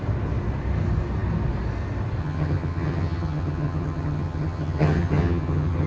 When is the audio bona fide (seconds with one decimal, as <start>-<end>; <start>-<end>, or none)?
0.0-2.2